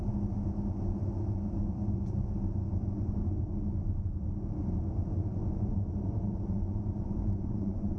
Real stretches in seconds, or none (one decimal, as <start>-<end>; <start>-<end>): 0.0-5.3

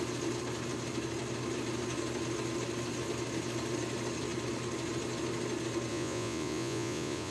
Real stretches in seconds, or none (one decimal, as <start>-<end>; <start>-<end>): 0.0-5.9

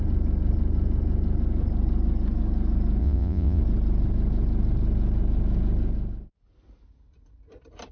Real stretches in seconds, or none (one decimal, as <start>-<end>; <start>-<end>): 0.0-3.0; 3.6-7.9

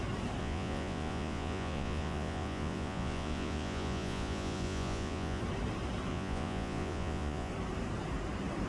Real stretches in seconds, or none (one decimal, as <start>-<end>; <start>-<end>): 0.0-0.4; 5.4-6.1; 7.5-8.7

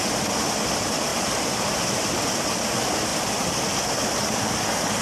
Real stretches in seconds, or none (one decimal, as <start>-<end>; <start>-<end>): 0.0-5.0

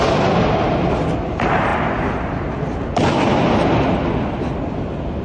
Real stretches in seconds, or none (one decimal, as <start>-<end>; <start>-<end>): 0.0-5.2

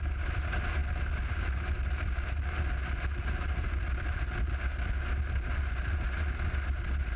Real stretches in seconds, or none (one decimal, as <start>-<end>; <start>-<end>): 0.0-7.2

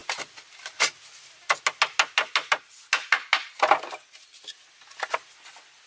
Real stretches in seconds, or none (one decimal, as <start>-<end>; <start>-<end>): 0.0-5.9